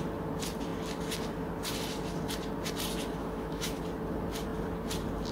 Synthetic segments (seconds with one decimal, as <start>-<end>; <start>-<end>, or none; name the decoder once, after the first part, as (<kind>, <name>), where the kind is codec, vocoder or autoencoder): 3.2-3.8 (autoencoder, DAC-VAE)